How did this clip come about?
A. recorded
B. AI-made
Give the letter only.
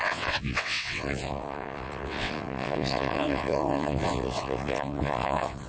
B